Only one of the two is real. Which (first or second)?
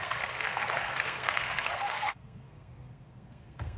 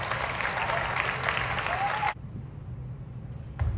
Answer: second